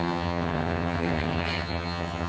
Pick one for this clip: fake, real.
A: fake